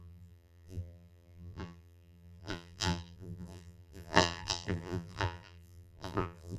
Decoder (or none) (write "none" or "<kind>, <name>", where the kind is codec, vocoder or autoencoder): vocoder, BigVGAN v2